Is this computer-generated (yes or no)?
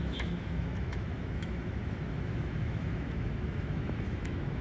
yes